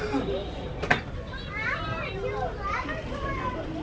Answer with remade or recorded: recorded